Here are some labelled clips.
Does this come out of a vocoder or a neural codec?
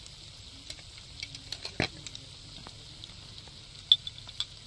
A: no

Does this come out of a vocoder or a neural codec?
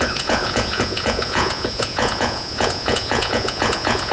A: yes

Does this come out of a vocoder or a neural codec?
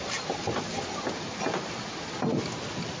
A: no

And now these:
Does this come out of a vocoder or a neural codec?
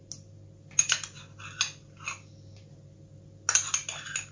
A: no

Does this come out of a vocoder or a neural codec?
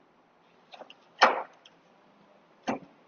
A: no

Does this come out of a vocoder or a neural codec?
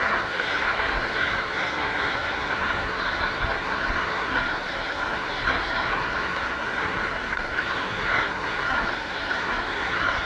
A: yes